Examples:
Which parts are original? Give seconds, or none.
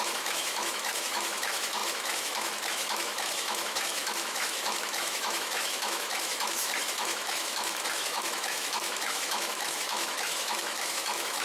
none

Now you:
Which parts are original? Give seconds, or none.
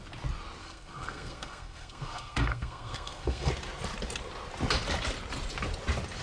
0.0-0.6; 3.5-6.2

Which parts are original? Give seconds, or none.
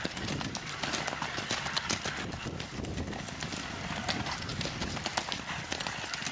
0.0-6.3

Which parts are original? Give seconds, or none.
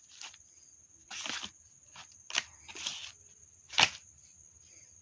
0.0-5.0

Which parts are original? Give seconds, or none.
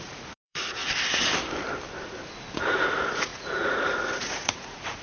0.8-2.7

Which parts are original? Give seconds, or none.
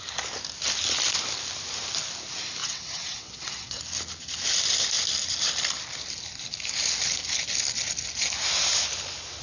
0.0-2.6; 3.8-9.4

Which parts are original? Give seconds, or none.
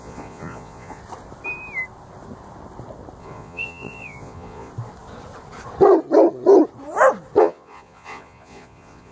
1.0-3.2; 4.7-7.4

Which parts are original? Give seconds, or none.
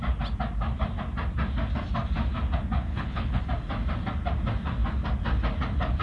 0.0-2.9; 3.4-6.0